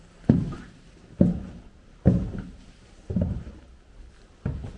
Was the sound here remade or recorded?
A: recorded